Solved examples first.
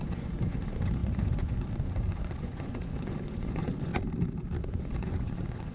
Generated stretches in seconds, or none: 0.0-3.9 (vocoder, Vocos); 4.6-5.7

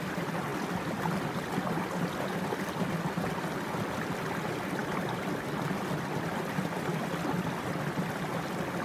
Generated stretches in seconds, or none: none

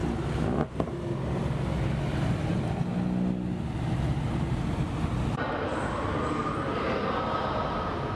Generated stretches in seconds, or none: none

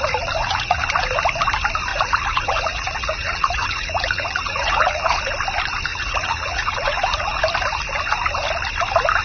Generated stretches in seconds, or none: 0.4-0.9 (vocoder, Vocos); 1.9-5.2; 5.9-7.4

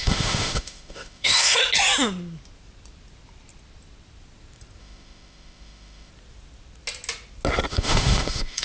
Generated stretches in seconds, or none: 0.0-1.6 (autoencoder, DAC-VAE); 4.8-6.1; 7.7-8.6